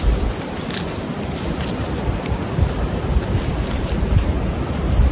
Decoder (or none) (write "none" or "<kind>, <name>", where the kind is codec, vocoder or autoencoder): none